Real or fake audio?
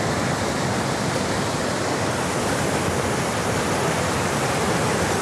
real